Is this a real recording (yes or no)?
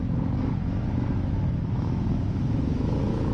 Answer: no